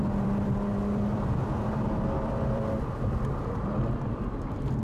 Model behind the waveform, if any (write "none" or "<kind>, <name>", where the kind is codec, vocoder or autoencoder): vocoder, BigVGAN v2